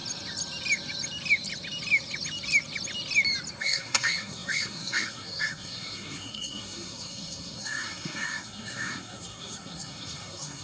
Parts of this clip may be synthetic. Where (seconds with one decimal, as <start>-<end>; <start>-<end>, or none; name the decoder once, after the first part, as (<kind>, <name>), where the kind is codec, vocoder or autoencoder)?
3.6-10.6 (codec, SNAC)